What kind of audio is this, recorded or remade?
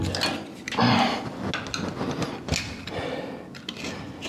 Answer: recorded